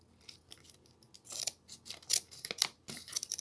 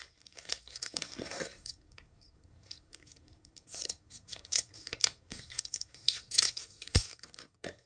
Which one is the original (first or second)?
first